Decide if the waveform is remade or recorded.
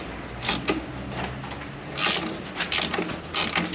recorded